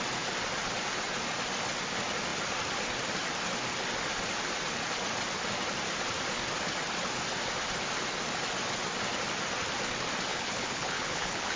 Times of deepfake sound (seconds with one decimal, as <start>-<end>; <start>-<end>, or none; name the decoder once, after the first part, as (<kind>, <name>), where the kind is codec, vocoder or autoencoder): 10.3-11.6 (codec, HILCodec)